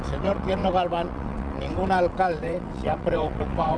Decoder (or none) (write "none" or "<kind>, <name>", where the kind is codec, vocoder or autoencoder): vocoder, WaveNeXt